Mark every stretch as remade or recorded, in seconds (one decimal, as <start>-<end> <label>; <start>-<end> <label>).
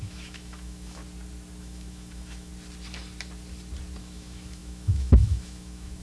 0.0-1.0 remade; 1.0-1.6 recorded; 1.6-2.5 remade; 2.5-4.0 recorded; 4.0-6.0 remade